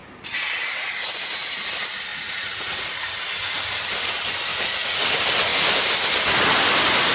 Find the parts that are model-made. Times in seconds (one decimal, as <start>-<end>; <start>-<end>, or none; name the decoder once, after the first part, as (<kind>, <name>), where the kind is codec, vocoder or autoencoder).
2.1-3.0 (vocoder, Vocos); 4.5-5.1